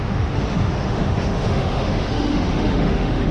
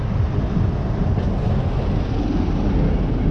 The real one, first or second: second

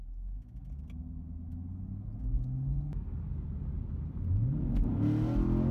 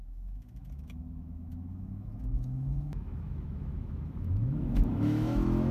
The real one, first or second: first